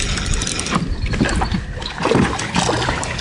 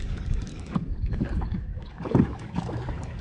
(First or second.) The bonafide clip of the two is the first